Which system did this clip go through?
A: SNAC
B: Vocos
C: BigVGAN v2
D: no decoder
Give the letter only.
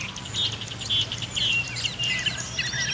D